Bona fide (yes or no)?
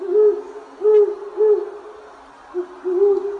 yes